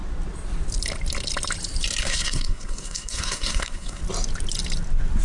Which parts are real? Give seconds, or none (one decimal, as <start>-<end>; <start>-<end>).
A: 0.0-2.0; 4.0-5.2